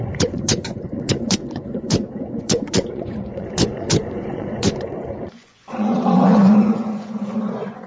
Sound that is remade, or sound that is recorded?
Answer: remade